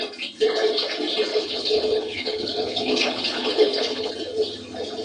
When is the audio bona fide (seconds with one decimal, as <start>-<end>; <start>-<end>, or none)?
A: 0.0-1.3; 4.1-5.0